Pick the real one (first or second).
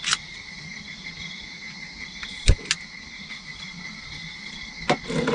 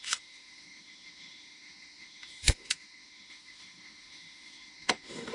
first